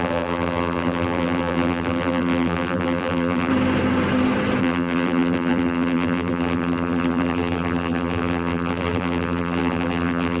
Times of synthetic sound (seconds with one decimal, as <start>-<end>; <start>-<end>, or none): 0.0-3.5; 4.6-10.4